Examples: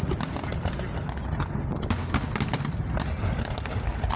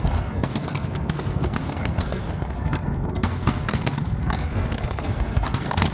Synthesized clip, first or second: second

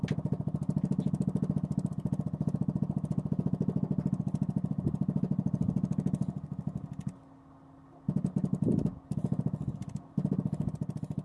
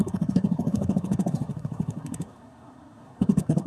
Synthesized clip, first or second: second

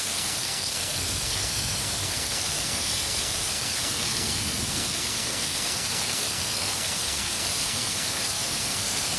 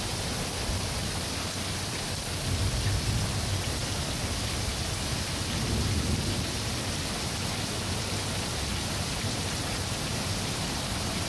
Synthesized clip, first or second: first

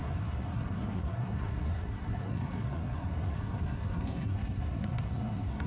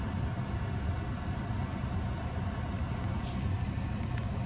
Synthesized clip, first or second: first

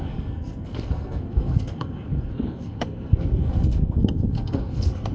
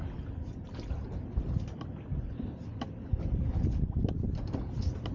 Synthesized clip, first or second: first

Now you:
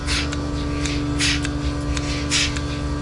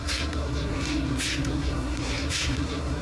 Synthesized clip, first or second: second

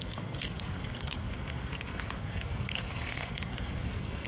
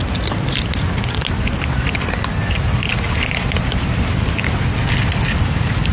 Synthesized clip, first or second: first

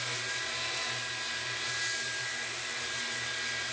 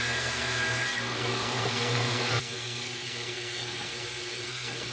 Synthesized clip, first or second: second